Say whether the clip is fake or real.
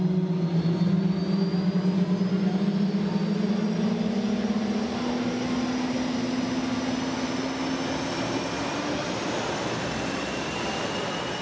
real